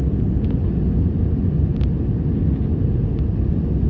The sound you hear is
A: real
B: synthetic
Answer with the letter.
A